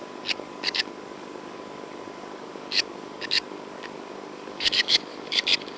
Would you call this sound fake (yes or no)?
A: yes